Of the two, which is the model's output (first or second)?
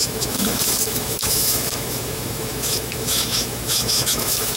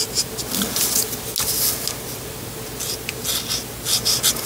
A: first